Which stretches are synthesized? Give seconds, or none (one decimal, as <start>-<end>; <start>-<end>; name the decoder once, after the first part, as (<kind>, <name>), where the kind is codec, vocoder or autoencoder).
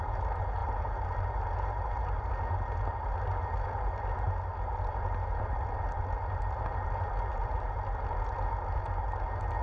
0.6-2.3 (vocoder, BigVGAN v2)